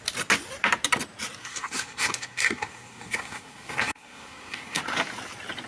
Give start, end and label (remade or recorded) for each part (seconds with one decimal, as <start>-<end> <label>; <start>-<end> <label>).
0.0-1.4 recorded; 1.4-4.8 remade; 4.8-5.7 recorded

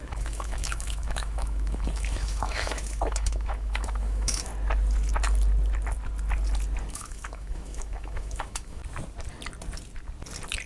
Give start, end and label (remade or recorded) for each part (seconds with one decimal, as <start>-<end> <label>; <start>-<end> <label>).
0.0-4.5 remade; 4.5-6.9 recorded; 6.9-8.8 remade; 8.8-10.7 recorded

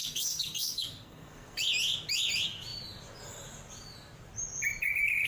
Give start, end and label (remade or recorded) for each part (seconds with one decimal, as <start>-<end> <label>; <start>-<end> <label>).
0.0-1.6 remade; 1.6-5.3 recorded

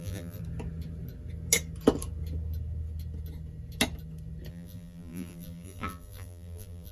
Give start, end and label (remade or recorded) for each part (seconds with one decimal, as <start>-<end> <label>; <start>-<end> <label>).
0.0-0.4 remade; 0.4-4.5 recorded; 4.5-6.9 remade